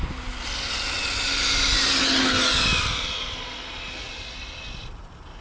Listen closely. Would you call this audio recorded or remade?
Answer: recorded